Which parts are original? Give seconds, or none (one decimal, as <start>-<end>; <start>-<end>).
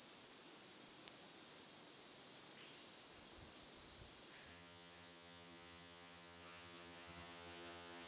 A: 0.0-4.5